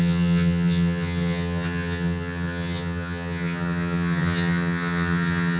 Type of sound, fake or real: fake